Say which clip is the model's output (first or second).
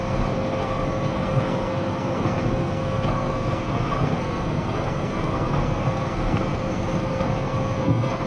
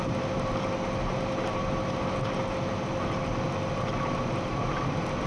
first